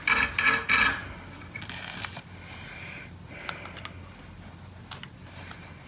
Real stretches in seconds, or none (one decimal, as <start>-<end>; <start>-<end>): 0.0-5.9